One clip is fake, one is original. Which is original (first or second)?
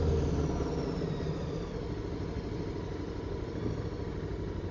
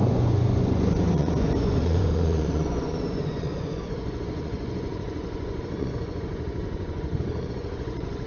first